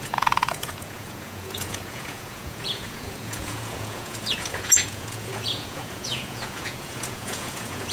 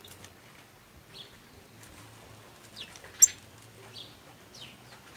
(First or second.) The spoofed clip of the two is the first